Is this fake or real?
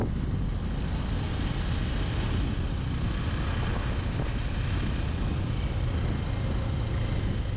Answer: real